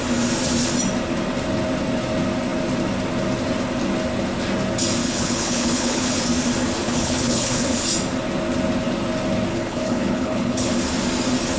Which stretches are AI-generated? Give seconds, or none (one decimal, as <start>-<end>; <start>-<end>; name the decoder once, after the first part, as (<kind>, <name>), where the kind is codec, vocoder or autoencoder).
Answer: 5.0-6.2 (codec, HILCodec); 6.8-7.8; 9.5-10.7